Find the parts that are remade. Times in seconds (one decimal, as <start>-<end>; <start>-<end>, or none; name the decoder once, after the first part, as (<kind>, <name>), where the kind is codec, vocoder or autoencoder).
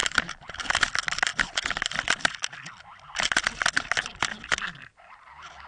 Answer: 0.0-0.7 (vocoder, BigVGAN v2)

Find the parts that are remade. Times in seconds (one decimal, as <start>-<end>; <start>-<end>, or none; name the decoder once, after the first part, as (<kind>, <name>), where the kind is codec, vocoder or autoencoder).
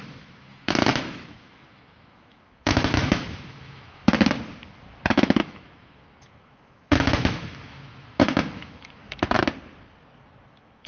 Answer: 0.0-4.0 (autoencoder, DAC-VAE); 5.1-9.0; 10.5-10.9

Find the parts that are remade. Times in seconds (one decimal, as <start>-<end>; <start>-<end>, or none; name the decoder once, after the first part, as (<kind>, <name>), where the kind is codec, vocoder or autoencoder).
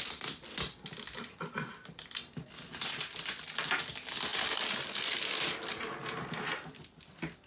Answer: none